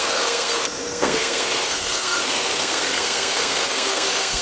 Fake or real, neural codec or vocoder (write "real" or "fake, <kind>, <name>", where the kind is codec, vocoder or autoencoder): fake, codec, SNAC